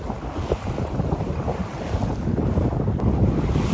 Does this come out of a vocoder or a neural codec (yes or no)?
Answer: no